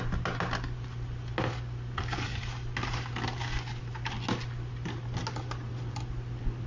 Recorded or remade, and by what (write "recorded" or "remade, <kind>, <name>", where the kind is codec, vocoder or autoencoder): recorded